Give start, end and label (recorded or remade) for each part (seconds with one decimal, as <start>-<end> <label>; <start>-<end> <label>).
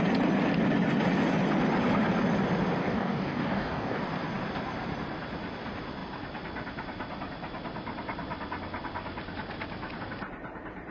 0.0-2.8 recorded; 2.8-4.0 remade; 4.0-10.9 recorded